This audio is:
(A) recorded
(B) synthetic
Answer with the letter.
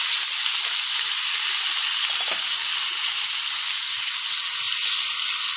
A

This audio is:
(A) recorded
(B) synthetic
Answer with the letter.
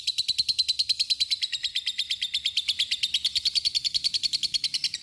A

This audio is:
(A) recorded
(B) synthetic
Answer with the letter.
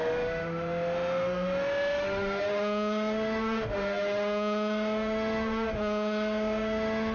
B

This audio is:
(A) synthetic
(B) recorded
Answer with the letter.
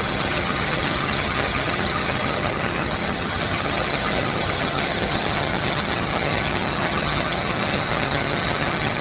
A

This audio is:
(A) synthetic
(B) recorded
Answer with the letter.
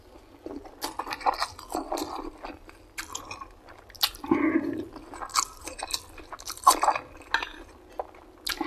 B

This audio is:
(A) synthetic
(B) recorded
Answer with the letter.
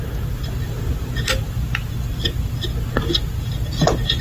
B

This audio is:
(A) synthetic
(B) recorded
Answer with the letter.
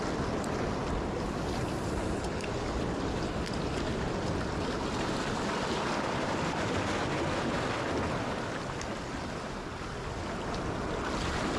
B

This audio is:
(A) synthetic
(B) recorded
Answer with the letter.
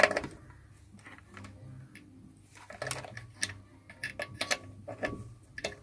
B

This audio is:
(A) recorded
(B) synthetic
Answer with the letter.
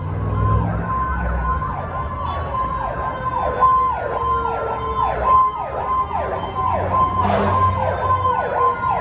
A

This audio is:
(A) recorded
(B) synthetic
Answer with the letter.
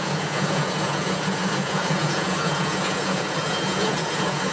B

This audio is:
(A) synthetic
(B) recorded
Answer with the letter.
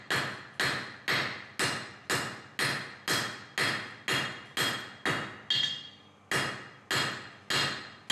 B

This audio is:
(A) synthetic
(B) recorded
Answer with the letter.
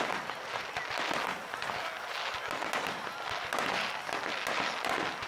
B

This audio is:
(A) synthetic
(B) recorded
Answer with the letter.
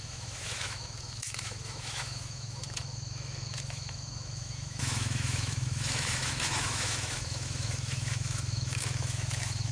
A